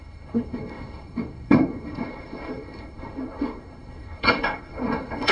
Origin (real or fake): fake